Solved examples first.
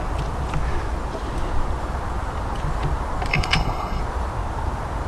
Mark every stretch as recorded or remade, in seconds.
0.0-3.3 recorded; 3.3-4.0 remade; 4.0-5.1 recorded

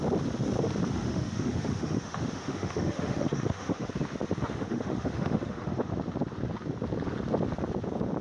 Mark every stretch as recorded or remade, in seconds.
0.0-0.9 recorded; 0.9-3.9 remade; 3.9-4.4 recorded; 4.4-5.9 remade; 5.9-8.2 recorded

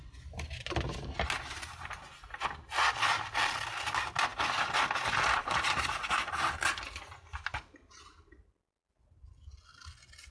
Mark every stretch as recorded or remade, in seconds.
0.0-4.3 recorded; 4.3-6.3 remade; 6.3-10.3 recorded

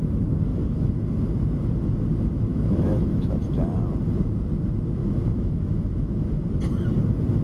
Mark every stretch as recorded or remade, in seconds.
0.0-0.5 recorded; 0.5-1.0 remade; 1.0-2.5 recorded; 2.5-3.4 remade; 3.4-5.0 recorded; 5.0-6.3 remade; 6.3-7.4 recorded

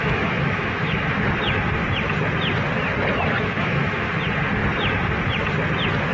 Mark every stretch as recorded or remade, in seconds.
0.0-1.3 remade; 1.3-3.5 recorded; 3.5-4.1 remade; 4.1-6.1 recorded